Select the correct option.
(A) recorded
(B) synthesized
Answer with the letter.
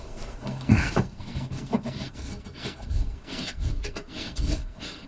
B